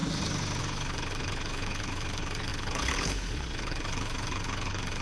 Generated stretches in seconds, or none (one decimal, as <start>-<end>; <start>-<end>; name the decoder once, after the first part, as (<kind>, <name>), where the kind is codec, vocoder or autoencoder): 0.6-5.0 (codec, HILCodec)